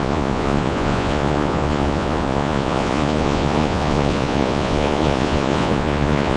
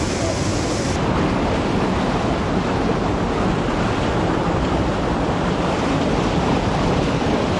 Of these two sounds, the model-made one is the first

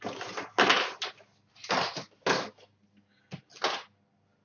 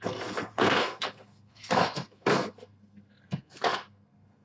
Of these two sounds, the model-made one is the second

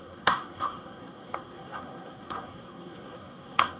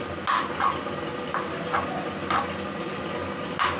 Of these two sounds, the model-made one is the first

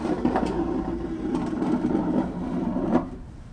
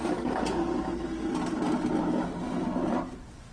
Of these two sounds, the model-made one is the first